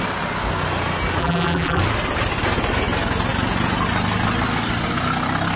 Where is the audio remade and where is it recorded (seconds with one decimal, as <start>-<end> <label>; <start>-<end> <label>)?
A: 0.0-1.2 recorded; 1.2-1.8 remade; 1.8-5.6 recorded